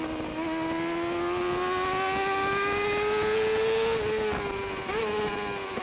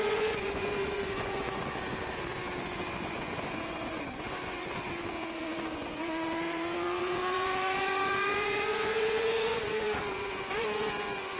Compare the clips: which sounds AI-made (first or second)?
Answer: second